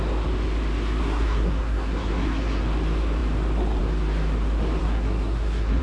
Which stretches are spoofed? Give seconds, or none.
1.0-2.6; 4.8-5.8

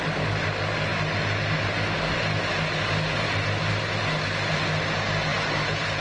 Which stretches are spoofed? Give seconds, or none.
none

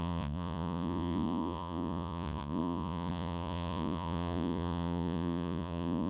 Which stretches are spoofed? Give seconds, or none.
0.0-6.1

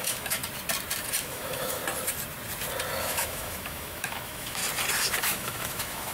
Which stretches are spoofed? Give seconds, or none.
0.0-0.4; 1.2-1.8; 3.0-4.6; 5.2-6.1